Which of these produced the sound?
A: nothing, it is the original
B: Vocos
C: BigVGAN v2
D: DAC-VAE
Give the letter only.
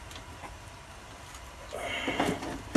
A